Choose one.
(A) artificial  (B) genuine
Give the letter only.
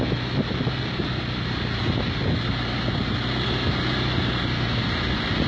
B